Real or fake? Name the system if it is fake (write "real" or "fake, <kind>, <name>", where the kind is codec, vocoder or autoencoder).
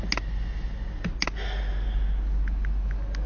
real